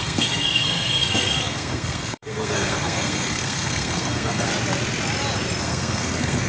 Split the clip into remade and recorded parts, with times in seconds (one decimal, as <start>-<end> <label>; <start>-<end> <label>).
0.0-4.5 remade; 4.5-5.6 recorded; 5.6-6.5 remade